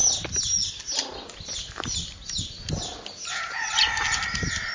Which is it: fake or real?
real